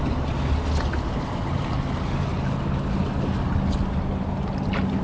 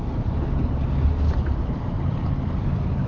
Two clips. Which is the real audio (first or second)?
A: first